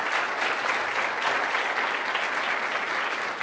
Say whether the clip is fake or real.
real